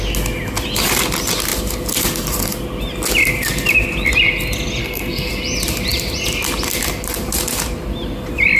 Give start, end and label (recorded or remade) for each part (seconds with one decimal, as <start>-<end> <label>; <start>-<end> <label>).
0.0-4.8 recorded; 4.8-5.3 remade; 5.3-8.6 recorded